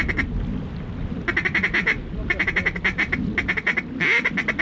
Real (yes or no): yes